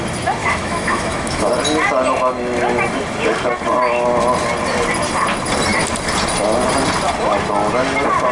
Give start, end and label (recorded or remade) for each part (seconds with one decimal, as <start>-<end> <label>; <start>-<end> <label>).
0.0-0.4 recorded; 0.4-1.5 remade; 1.5-8.3 recorded

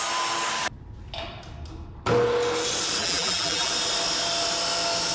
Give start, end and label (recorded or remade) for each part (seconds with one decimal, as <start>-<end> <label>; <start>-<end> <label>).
0.0-3.0 recorded; 3.0-3.7 remade; 3.7-5.1 recorded

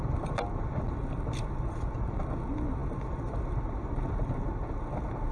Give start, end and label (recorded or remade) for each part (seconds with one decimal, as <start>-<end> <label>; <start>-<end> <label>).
0.0-5.3 recorded

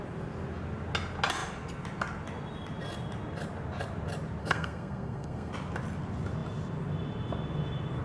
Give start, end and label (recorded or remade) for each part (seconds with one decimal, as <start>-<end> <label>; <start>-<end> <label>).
0.0-4.4 recorded; 4.4-5.5 remade; 5.5-8.0 recorded

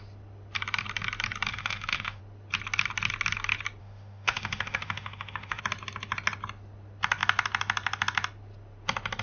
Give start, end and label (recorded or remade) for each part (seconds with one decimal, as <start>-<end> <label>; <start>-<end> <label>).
0.0-1.5 recorded; 1.5-2.2 remade; 2.2-3.8 recorded; 3.8-5.6 remade; 5.6-9.2 recorded

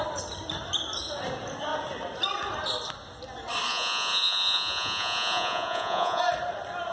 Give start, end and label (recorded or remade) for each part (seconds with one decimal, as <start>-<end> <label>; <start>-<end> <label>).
0.0-3.7 recorded; 3.7-6.2 remade; 6.2-6.9 recorded

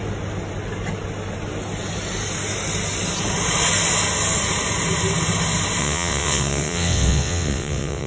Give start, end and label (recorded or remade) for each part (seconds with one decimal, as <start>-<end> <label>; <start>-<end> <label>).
0.0-5.8 recorded; 5.8-8.1 remade